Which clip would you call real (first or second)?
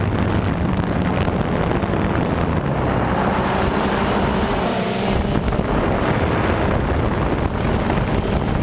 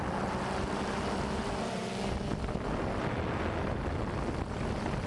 second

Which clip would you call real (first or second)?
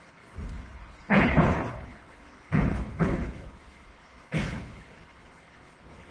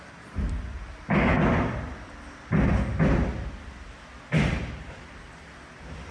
second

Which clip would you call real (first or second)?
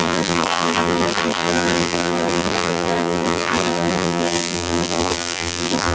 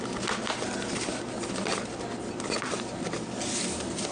second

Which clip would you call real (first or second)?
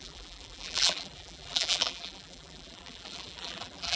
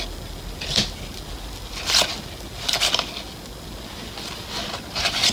second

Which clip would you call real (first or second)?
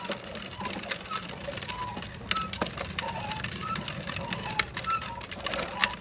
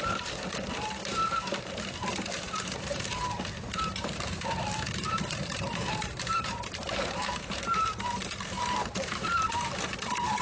first